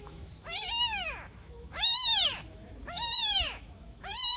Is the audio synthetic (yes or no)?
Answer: yes